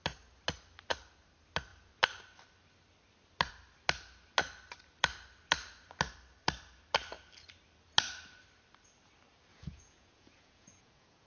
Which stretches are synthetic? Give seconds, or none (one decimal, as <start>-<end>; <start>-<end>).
9.5-11.3